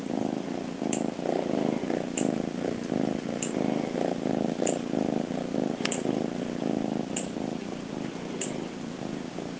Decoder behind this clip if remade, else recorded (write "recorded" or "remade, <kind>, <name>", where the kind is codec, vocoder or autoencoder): recorded